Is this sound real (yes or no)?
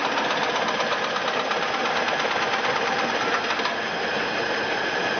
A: yes